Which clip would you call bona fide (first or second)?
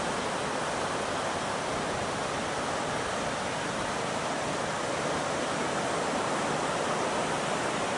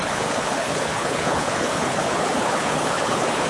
first